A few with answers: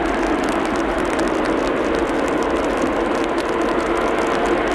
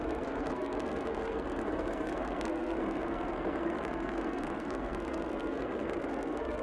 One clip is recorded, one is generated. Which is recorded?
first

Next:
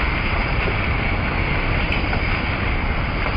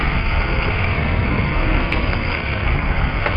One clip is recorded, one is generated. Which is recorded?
first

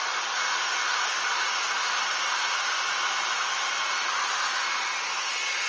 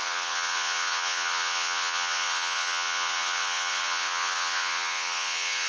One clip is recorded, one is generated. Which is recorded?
first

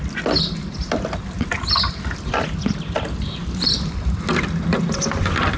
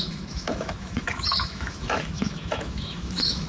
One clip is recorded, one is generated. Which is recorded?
first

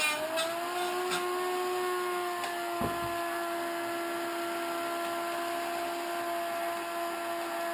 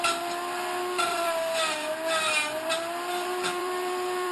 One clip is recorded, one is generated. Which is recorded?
first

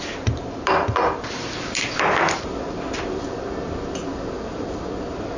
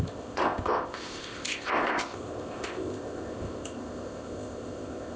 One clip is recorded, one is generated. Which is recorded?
first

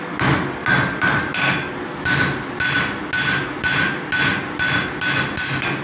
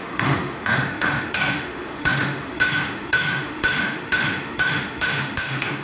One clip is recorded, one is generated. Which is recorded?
first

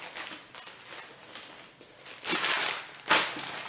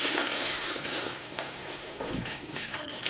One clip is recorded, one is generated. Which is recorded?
first